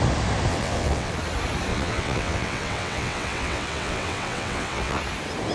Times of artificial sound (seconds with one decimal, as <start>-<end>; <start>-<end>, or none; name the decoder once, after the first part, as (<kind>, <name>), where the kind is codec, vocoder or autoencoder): 0.5-1.1 (vocoder, WaveNeXt); 1.7-5.0